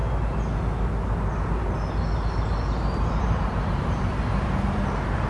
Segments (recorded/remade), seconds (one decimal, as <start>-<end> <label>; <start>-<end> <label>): 0.0-3.2 recorded; 3.2-5.3 remade